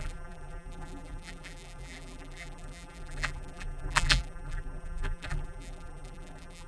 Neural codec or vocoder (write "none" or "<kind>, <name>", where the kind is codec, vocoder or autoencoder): vocoder, BigVGAN v2